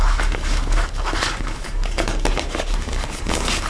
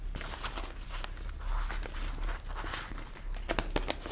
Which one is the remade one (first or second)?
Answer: first